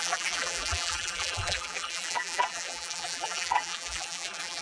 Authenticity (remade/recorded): remade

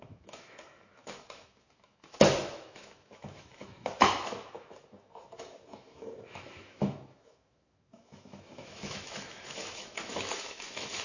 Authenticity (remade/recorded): remade